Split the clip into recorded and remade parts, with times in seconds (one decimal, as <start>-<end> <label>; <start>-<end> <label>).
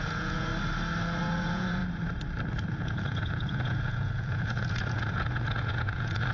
0.0-0.5 remade; 0.5-1.2 recorded; 1.2-1.8 remade; 1.8-2.7 recorded; 2.7-6.3 remade